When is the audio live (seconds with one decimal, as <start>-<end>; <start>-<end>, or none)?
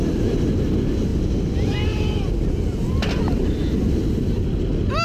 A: 0.0-5.0